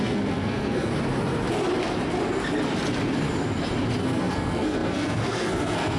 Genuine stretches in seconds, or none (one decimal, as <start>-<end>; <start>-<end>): 0.9-4.0